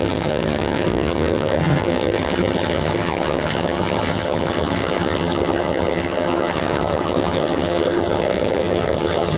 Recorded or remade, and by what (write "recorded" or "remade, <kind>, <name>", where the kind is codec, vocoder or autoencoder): remade, vocoder, HiFi-GAN